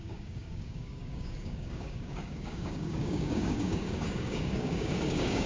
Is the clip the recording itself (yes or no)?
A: no